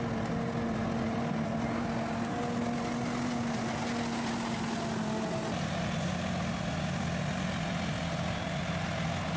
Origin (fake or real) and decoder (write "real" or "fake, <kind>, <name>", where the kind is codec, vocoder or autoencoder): real